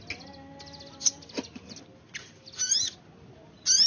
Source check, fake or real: real